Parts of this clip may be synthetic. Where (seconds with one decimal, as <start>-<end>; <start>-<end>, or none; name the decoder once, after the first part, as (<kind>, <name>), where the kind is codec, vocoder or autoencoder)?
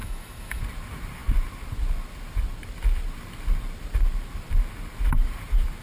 0.0-0.6 (autoencoder, DAC-VAE)